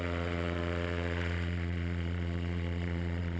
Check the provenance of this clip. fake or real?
fake